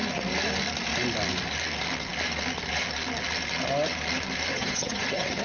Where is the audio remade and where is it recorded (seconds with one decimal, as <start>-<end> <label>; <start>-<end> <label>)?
0.0-4.5 recorded; 4.5-5.4 remade